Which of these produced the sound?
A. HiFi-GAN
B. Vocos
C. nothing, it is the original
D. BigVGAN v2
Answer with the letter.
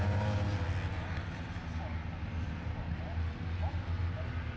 C